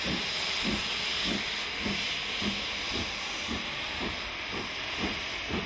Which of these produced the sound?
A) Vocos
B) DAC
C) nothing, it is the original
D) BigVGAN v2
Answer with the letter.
C